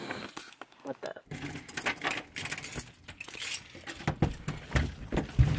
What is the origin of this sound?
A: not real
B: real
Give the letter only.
B